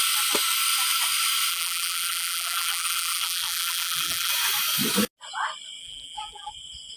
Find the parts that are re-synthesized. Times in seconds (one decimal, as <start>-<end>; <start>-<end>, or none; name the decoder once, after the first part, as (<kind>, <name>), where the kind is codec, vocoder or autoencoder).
1.5-4.3 (vocoder, BigVGAN v2); 5.8-6.5